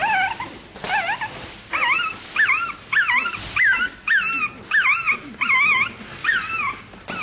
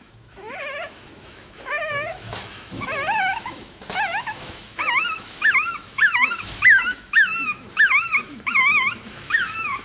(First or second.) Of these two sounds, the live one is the first